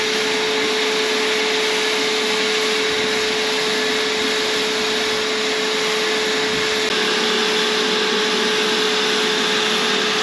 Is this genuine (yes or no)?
yes